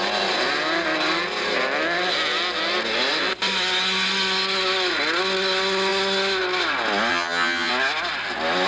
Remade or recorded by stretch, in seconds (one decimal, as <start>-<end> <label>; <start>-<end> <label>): 0.0-7.1 recorded; 7.1-7.7 remade; 7.7-8.7 recorded